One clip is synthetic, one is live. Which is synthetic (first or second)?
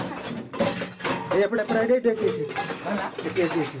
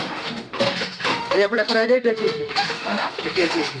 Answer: second